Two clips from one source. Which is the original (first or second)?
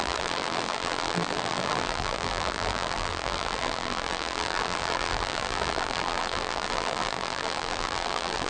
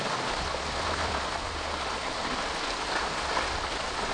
second